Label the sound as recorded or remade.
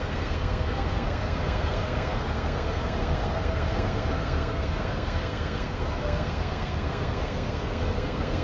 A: remade